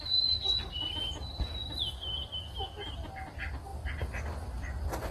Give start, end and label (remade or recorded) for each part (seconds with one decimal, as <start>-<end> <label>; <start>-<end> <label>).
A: 0.0-5.1 recorded